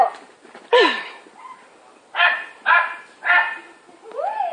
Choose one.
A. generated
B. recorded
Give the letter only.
B